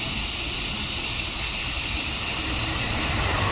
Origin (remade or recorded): recorded